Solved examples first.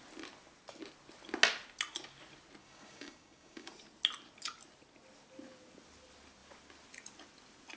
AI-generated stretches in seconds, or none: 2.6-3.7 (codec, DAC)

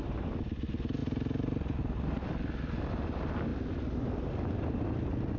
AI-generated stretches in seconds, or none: none

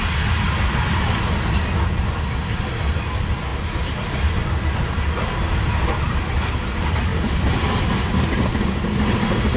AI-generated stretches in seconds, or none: none

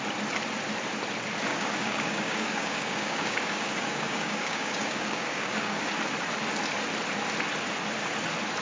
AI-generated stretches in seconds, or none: 1.5-5.9 (codec, DAC)

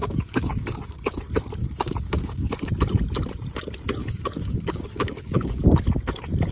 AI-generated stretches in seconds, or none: 0.0-1.2 (codec, DAC); 1.6-2.7; 4.0-5.6

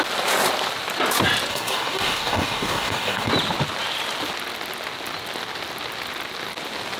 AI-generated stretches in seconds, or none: 1.5-3.3 (codec, DAC)

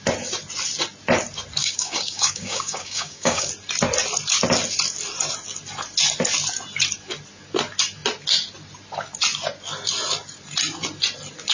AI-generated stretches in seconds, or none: 1.6-3.5 (codec, DAC)

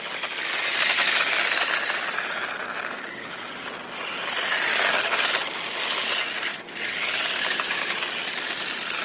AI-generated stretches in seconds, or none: 4.7-5.3 (codec, DAC); 6.5-8.0